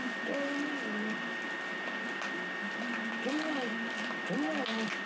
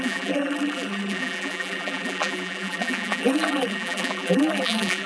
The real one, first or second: first